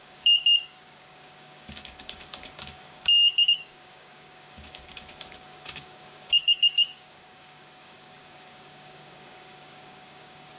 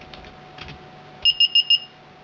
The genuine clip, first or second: second